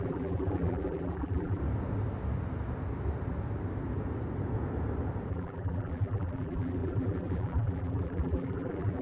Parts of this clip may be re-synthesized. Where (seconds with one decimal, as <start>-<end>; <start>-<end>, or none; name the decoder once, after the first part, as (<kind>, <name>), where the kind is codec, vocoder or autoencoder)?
0.0-1.6 (vocoder, BigVGAN v2); 5.3-9.0